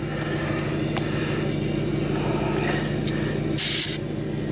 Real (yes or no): yes